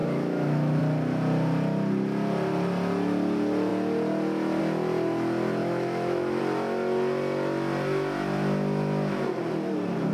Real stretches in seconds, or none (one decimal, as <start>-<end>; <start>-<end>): 0.8-5.6; 6.4-10.1